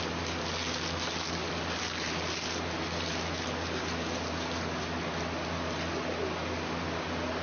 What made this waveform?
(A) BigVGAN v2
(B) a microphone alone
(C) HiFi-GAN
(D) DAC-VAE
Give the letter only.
B